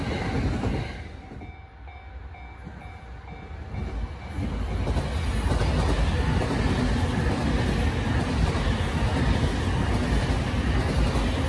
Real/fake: real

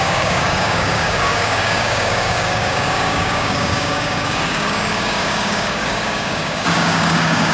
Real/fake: fake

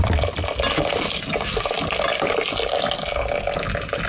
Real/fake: real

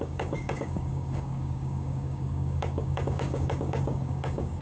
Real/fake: fake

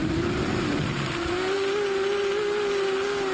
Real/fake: real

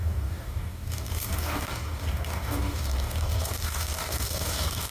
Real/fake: fake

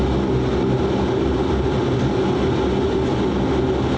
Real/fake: real